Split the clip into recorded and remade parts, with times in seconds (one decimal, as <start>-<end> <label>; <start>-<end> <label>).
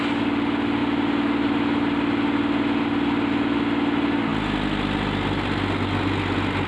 0.0-6.7 recorded